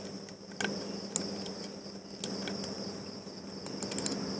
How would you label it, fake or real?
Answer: real